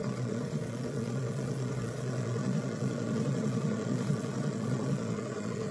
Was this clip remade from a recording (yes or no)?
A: yes